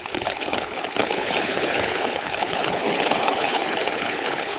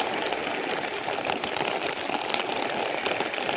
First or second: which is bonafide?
second